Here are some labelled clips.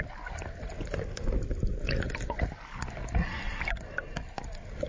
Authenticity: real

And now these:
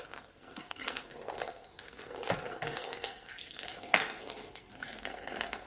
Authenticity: fake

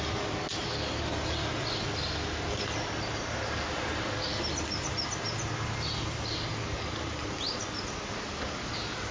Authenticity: real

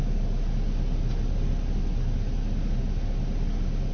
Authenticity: real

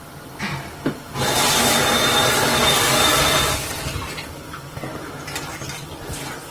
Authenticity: real